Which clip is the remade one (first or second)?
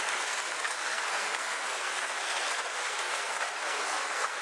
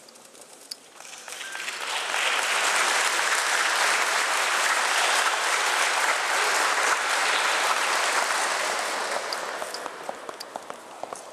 first